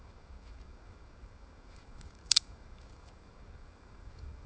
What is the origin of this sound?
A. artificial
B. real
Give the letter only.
A